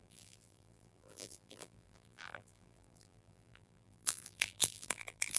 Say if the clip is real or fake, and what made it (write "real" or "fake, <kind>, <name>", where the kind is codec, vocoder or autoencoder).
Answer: fake, vocoder, BigVGAN v2